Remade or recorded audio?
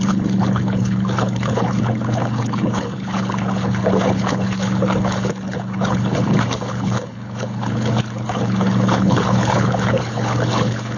remade